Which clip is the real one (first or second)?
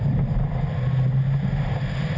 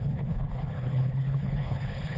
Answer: first